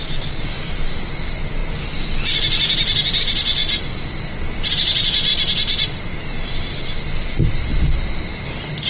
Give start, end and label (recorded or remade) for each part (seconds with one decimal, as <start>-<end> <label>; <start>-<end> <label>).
0.0-8.9 recorded